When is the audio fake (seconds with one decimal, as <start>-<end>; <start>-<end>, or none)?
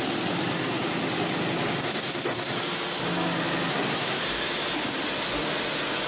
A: 1.8-2.5; 3.7-4.2